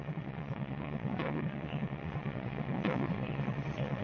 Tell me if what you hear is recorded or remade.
remade